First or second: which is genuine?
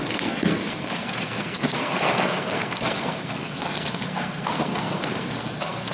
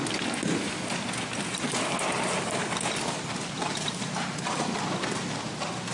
second